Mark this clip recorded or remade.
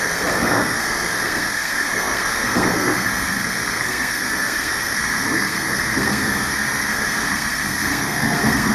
remade